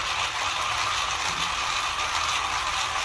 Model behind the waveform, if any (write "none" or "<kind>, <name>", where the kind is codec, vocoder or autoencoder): none